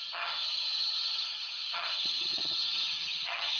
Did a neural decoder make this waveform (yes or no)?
yes